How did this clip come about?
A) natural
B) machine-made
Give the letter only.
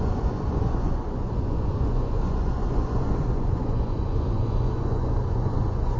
B